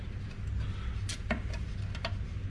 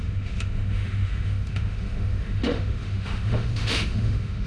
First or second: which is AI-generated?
second